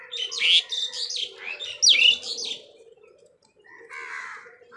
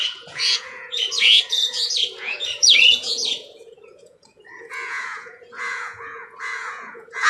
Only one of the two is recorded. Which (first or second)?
first